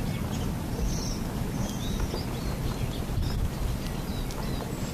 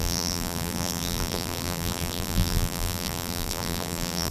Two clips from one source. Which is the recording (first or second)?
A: first